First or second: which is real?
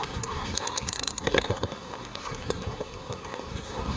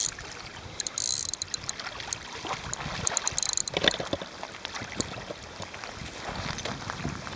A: second